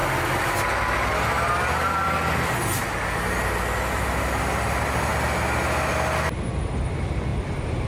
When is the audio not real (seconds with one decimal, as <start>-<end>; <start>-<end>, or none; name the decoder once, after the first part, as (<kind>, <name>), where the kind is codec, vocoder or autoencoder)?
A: none